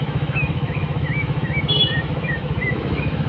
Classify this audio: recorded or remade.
remade